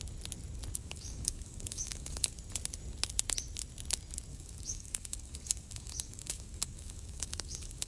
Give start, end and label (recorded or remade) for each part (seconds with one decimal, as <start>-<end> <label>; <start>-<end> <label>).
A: 0.0-0.8 recorded; 0.8-2.3 remade; 2.3-4.3 recorded; 4.3-7.9 remade